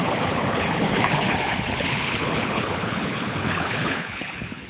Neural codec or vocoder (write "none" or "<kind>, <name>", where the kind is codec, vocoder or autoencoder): codec, HILCodec